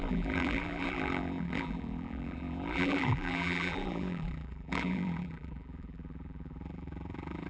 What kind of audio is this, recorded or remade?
remade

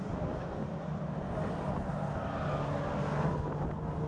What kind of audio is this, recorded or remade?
recorded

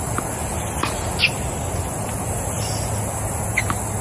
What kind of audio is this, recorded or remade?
recorded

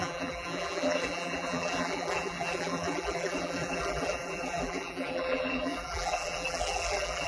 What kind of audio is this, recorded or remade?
remade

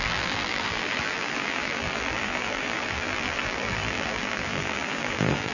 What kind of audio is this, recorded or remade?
remade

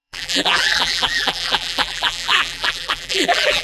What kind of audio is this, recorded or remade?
remade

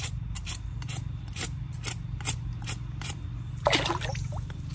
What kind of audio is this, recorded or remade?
recorded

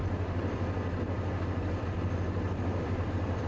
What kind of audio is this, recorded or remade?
remade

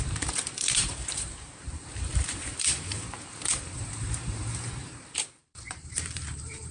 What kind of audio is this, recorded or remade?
remade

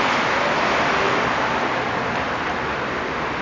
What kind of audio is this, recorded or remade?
remade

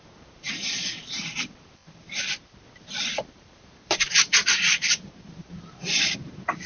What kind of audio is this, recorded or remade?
remade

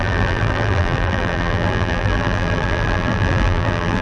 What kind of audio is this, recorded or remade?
remade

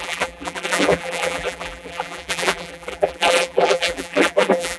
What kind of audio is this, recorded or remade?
remade